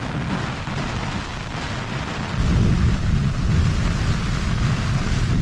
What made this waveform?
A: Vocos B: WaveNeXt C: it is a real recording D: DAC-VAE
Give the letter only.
C